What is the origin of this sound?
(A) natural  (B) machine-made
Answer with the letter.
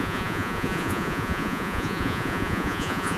B